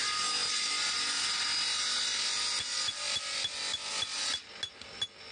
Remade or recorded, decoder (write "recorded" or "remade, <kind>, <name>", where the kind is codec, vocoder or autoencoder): recorded